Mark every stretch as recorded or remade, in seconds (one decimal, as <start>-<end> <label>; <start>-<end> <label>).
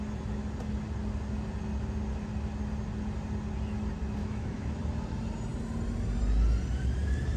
0.0-4.2 recorded; 4.2-4.8 remade; 4.8-7.4 recorded